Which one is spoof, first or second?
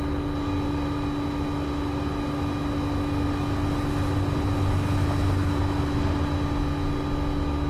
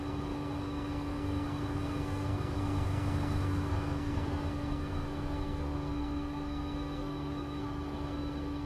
second